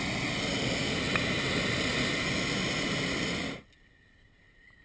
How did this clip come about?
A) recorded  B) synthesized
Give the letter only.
A